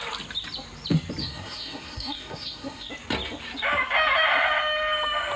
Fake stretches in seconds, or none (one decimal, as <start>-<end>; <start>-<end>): 1.2-2.9